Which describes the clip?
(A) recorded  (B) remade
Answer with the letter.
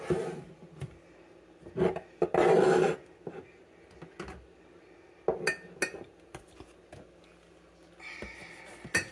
A